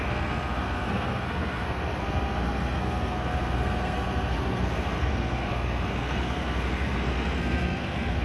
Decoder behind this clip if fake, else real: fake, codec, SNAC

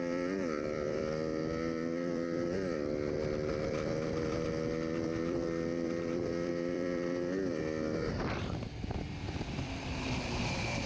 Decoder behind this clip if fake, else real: fake, vocoder, BigVGAN v2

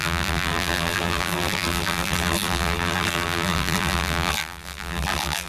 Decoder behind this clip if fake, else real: fake, vocoder, BigVGAN v2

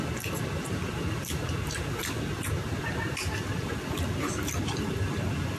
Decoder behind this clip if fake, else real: real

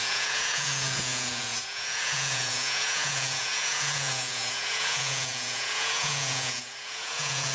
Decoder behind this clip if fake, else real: fake, vocoder, Vocos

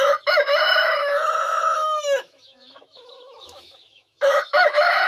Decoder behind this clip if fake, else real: fake, autoencoder, DAC-VAE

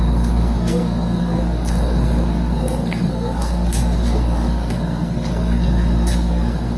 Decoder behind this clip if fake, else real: fake, codec, SNAC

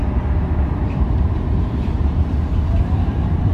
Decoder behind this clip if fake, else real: fake, vocoder, BigVGAN v2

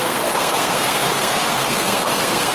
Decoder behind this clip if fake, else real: fake, codec, SNAC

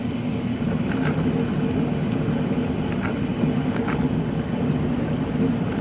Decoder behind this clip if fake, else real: real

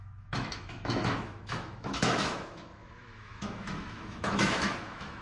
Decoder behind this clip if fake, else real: fake, autoencoder, DAC-VAE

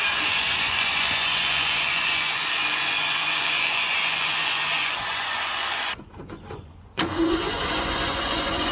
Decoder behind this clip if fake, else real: fake, vocoder, Vocos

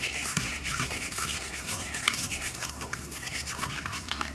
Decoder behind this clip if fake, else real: fake, codec, SNAC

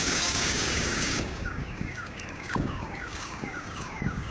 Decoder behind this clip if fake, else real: fake, codec, DAC